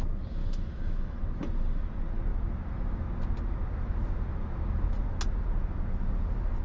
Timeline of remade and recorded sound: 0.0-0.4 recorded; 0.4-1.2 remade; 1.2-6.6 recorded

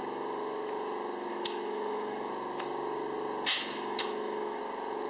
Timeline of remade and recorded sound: 0.0-1.3 recorded; 1.3-2.3 remade; 2.3-3.5 recorded; 3.5-4.6 remade; 4.6-5.1 recorded

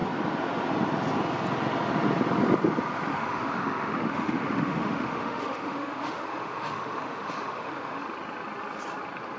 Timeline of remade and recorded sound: 0.0-3.1 recorded; 3.1-8.0 remade; 8.0-9.4 recorded

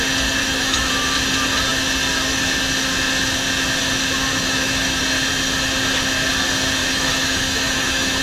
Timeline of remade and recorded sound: 0.0-0.4 recorded; 0.4-0.9 remade; 0.9-4.3 recorded; 4.3-5.0 remade; 5.0-6.8 recorded; 6.8-8.2 remade

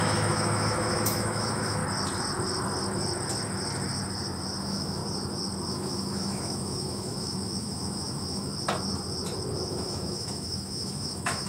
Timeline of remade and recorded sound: 0.0-1.8 remade; 1.8-4.6 recorded; 4.6-5.0 remade; 5.0-5.7 recorded; 5.7-8.5 remade; 8.5-9.7 recorded; 9.7-11.5 remade

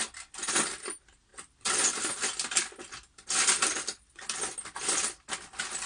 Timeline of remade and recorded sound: 0.0-5.9 recorded